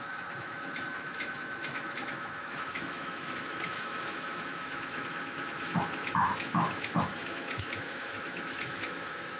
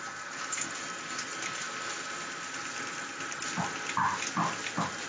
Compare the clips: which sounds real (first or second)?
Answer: second